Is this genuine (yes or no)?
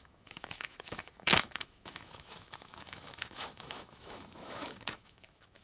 no